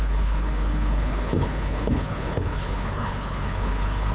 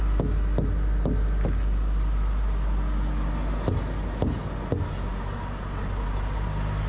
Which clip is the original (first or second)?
second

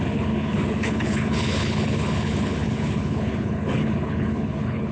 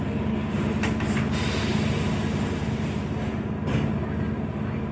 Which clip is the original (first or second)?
second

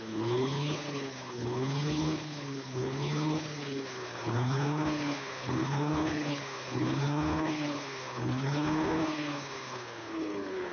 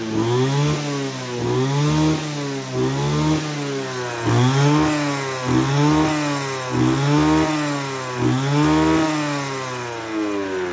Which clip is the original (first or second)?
second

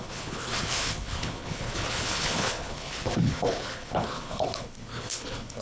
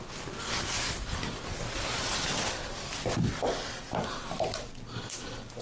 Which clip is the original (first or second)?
second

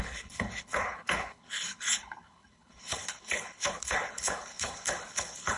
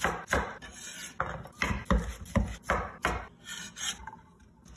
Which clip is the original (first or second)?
second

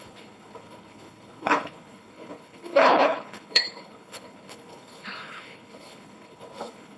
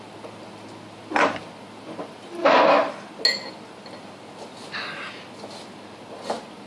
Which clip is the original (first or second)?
second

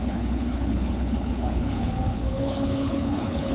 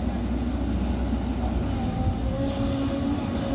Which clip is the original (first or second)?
second